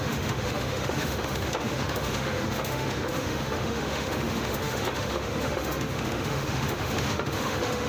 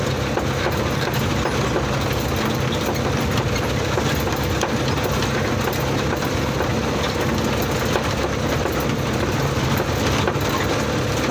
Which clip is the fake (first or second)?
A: first